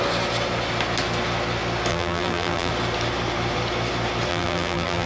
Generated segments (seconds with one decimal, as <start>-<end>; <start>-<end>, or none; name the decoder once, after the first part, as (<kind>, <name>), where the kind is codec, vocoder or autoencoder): 1.9-2.7 (vocoder, BigVGAN v2); 4.3-5.1